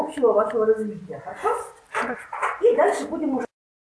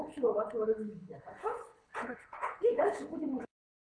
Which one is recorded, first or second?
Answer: first